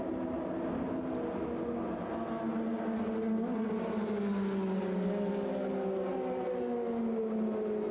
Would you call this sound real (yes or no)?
yes